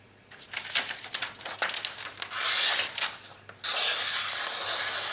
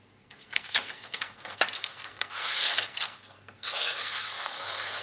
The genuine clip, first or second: first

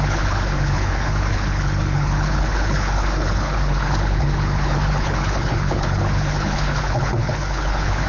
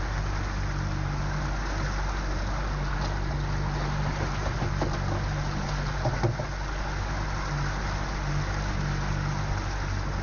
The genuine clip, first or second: second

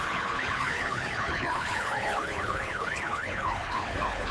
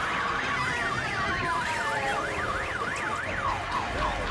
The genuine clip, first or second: second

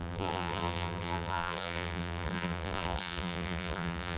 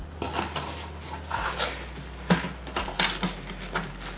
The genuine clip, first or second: second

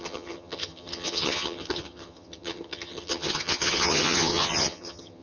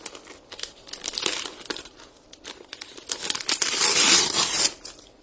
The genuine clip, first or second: second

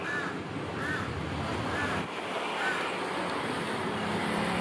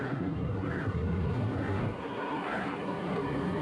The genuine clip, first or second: first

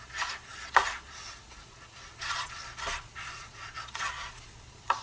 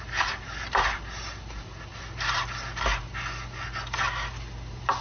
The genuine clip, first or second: second